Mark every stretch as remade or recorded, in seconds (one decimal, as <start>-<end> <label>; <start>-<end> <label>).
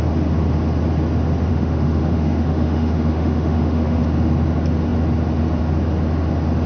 0.0-1.5 recorded; 1.5-4.0 remade; 4.0-6.7 recorded